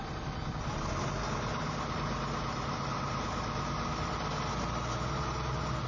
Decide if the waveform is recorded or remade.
recorded